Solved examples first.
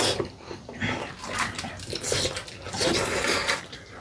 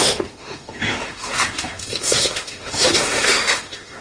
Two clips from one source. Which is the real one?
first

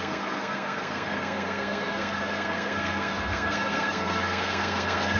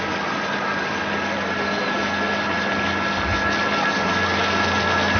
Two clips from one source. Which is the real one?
second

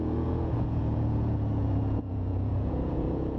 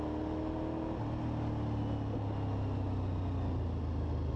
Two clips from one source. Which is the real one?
second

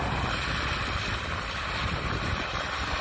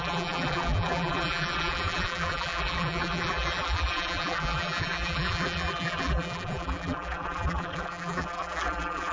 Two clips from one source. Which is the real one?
first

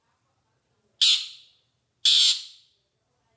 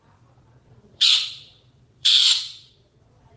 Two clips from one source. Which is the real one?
first